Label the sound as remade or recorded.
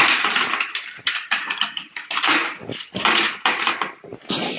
recorded